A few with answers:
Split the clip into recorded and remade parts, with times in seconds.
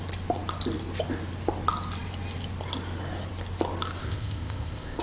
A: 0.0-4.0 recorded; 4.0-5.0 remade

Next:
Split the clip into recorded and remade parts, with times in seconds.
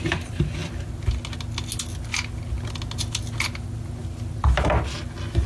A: 0.0-5.5 recorded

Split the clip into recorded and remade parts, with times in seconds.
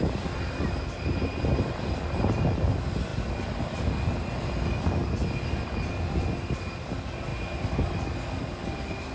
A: 0.0-9.1 recorded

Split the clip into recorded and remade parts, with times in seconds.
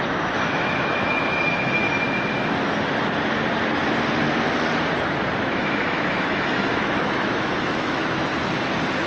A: 0.0-1.8 remade; 1.8-5.4 recorded; 5.4-8.3 remade; 8.3-9.1 recorded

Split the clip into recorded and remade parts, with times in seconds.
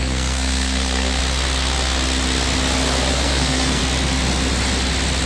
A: 0.0-1.2 remade; 1.2-3.1 recorded; 3.1-3.8 remade; 3.8-5.3 recorded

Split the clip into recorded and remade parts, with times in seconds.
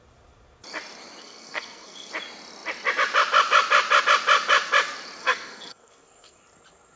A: 0.0-1.2 recorded; 1.2-2.1 remade; 2.1-5.2 recorded; 5.2-6.4 remade; 6.4-7.0 recorded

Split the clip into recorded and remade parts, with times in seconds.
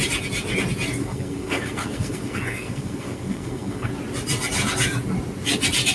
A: 0.0-1.0 recorded; 1.0-3.9 remade; 3.9-5.9 recorded